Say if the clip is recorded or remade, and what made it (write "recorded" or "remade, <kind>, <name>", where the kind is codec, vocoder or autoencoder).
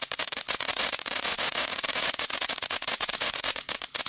remade, vocoder, Vocos